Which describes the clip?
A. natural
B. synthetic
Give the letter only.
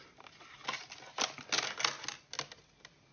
A